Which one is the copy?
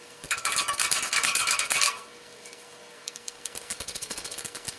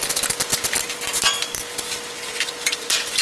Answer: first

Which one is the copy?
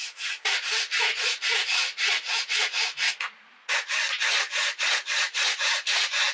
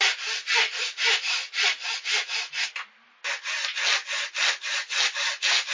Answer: first